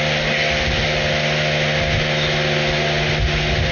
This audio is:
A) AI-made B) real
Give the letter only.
B